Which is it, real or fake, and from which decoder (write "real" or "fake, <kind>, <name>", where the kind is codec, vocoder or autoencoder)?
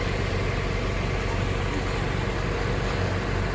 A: real